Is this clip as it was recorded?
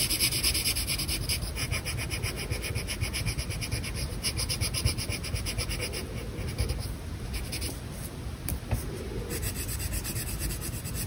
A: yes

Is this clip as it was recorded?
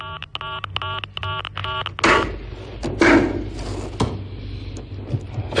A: yes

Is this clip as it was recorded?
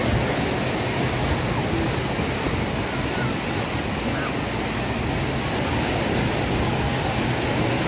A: yes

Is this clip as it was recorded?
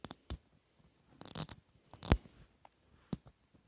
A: yes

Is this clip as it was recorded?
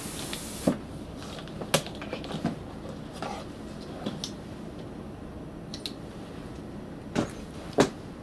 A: yes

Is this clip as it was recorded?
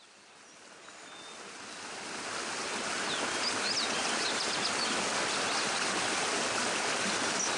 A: yes